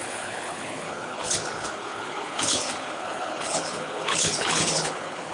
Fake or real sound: fake